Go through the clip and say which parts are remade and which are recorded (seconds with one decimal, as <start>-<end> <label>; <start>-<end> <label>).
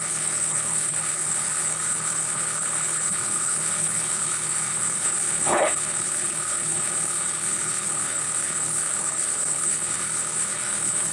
0.0-11.1 remade